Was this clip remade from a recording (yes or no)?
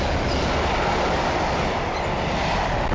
no